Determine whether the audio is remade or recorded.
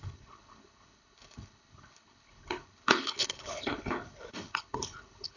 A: remade